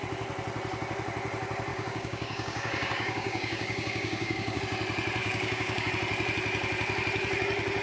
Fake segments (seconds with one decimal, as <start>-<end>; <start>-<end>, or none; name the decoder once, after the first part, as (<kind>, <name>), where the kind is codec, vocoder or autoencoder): 1.7-4.6 (codec, DAC); 5.2-5.9